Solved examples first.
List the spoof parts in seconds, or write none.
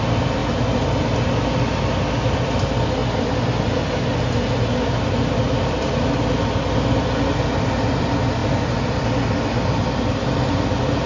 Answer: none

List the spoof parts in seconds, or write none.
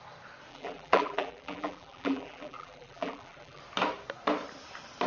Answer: 0.5-3.6 (vocoder, BigVGAN v2)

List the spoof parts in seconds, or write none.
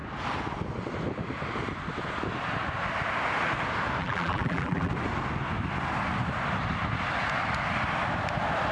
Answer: 4.0-4.9 (vocoder, BigVGAN v2)